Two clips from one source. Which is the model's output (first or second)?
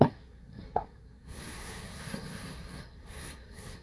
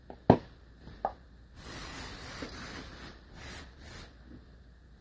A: first